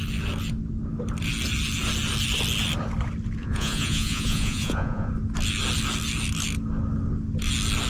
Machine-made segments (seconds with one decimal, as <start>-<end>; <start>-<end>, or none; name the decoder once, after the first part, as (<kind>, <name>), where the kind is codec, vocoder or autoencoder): 3.4-5.1 (vocoder, Vocos)